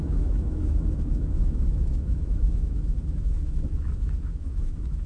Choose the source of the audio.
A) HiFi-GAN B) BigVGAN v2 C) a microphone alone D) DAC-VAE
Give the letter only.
D